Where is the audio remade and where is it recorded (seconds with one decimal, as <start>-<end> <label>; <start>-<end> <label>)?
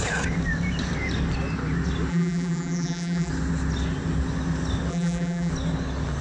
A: 0.0-2.1 recorded; 2.1-3.3 remade; 3.3-4.9 recorded; 4.9-5.5 remade; 5.5-6.2 recorded